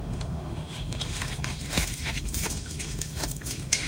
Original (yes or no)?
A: no